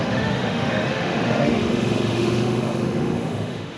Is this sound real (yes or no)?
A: no